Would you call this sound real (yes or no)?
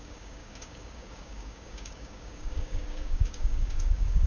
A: no